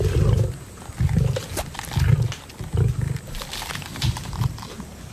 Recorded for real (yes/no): yes